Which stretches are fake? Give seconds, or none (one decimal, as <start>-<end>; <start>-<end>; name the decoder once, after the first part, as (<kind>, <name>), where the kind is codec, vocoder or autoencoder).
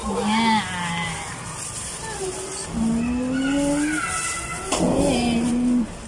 none